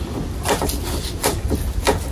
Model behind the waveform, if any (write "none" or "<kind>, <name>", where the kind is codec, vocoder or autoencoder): none